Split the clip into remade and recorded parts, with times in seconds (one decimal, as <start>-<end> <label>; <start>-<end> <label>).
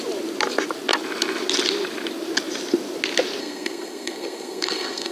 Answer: 0.0-3.4 recorded; 3.4-5.1 remade